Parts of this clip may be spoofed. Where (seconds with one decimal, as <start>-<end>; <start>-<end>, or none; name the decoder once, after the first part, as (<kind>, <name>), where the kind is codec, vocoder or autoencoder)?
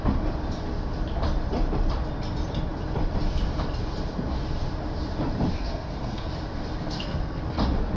5.5-6.3 (codec, SNAC); 6.8-7.4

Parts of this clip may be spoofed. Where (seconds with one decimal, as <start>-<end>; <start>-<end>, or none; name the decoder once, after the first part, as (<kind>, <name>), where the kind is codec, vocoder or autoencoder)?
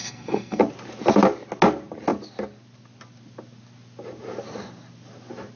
0.0-0.6 (codec, SNAC)